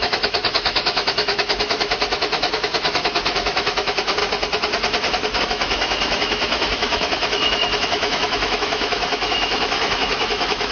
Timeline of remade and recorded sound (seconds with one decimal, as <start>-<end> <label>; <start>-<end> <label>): 0.0-4.2 remade; 4.2-5.4 recorded; 5.4-10.7 remade